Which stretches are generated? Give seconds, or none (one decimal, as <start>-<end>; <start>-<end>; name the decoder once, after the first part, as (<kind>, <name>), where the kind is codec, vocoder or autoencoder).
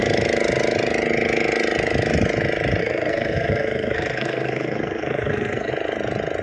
2.8-5.7 (codec, SNAC)